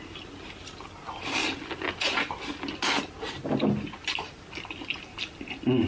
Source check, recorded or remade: recorded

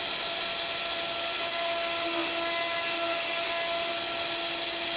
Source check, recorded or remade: recorded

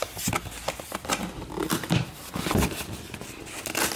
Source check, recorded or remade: recorded